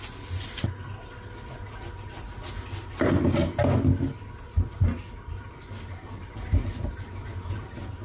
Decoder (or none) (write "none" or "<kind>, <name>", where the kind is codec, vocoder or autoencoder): none